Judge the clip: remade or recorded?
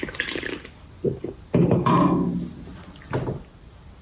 recorded